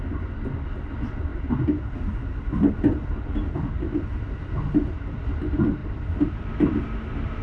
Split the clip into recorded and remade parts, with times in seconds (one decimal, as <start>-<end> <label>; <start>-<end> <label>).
0.0-5.8 recorded; 5.8-6.8 remade; 6.8-7.4 recorded